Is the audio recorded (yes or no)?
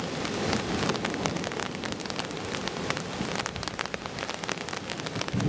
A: no